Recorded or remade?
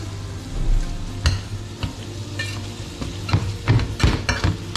recorded